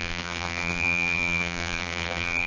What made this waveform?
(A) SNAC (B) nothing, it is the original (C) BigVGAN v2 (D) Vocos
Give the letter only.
C